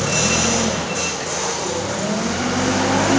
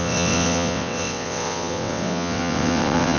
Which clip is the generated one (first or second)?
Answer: second